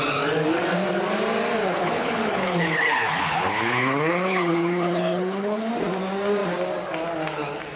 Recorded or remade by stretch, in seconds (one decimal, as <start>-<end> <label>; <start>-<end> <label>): 0.0-1.6 recorded; 1.6-5.7 remade; 5.7-7.8 recorded